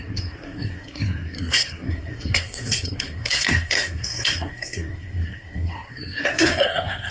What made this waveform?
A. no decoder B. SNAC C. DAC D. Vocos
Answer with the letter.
B